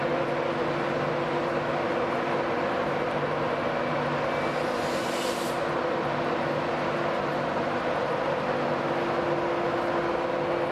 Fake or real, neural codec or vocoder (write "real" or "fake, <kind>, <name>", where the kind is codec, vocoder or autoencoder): real